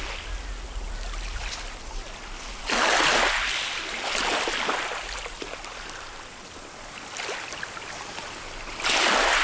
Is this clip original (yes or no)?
yes